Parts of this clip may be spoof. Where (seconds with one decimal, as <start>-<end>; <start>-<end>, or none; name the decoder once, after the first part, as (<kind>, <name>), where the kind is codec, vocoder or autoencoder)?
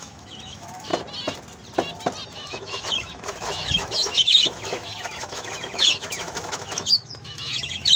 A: 0.0-0.9 (autoencoder, DAC-VAE); 2.3-8.0